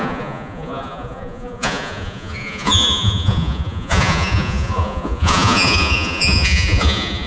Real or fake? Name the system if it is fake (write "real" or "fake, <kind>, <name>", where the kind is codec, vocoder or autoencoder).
fake, vocoder, Vocos